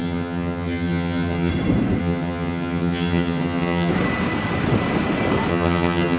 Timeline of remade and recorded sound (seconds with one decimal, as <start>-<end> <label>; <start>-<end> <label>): 0.0-1.5 remade; 1.5-2.0 recorded; 2.0-3.9 remade; 3.9-5.5 recorded; 5.5-6.2 remade